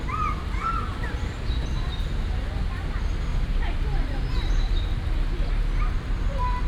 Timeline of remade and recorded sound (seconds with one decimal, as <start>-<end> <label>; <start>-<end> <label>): 0.0-0.9 recorded; 0.9-1.7 remade; 1.7-3.3 recorded; 3.3-5.5 remade; 5.5-6.7 recorded